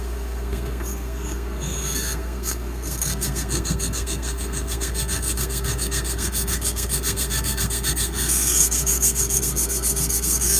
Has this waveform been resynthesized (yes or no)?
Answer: yes